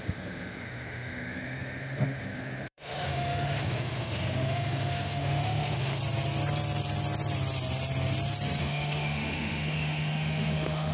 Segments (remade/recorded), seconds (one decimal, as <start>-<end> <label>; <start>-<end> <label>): 0.0-6.0 remade; 6.0-8.6 recorded; 8.6-10.9 remade